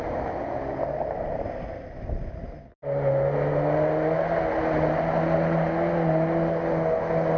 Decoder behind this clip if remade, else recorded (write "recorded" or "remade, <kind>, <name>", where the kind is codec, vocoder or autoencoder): recorded